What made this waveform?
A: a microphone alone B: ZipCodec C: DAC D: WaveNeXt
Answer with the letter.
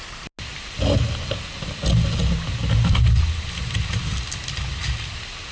A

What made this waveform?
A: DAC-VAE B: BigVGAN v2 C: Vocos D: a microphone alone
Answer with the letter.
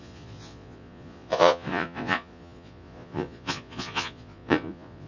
C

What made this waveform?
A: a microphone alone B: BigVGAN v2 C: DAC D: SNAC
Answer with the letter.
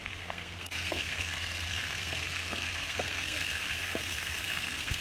D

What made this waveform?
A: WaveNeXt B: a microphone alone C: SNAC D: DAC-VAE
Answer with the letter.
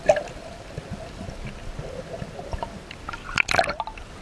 B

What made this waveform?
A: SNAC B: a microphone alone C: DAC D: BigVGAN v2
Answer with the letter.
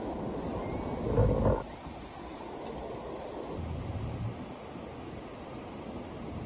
B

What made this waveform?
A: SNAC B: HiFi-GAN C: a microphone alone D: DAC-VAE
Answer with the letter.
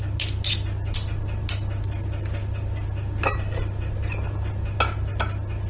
C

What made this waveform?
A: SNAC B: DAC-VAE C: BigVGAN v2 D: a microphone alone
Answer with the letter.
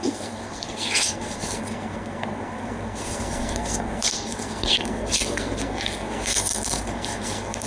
A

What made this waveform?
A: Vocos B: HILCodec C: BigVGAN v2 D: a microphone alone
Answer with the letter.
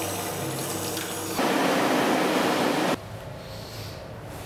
D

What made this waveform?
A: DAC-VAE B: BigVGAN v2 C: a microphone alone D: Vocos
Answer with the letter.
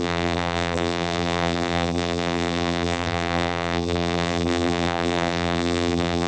B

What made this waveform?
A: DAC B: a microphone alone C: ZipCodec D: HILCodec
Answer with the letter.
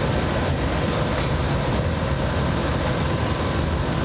B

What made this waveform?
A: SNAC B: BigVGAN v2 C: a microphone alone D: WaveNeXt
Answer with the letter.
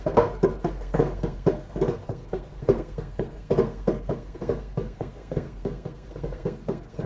A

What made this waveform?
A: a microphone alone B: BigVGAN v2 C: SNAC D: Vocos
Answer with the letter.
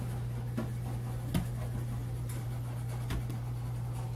B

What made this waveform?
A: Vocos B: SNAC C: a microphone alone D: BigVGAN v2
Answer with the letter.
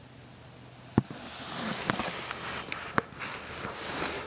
C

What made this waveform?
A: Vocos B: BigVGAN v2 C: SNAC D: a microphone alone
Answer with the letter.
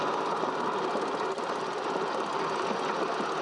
D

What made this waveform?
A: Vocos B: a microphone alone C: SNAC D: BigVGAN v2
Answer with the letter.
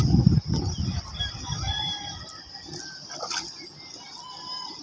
B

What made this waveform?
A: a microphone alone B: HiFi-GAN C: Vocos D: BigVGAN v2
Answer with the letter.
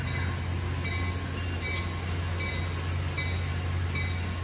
A